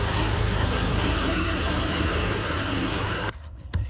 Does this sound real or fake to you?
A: fake